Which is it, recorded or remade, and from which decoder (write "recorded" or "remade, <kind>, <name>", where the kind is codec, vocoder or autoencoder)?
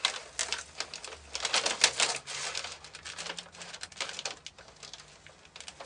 recorded